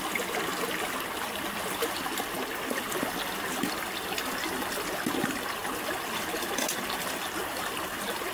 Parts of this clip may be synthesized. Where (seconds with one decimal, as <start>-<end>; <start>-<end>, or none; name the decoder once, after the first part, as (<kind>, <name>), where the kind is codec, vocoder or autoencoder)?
none